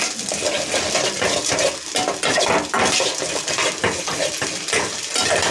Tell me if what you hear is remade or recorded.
recorded